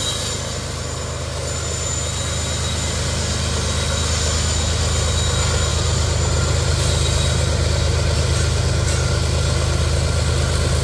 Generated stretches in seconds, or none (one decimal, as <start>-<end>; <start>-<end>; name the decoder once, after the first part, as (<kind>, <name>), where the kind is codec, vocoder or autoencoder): none